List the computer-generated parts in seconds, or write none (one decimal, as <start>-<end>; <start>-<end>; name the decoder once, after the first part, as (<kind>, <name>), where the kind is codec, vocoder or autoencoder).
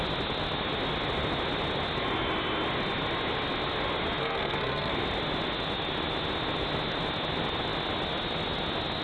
4.2-4.9 (codec, SNAC)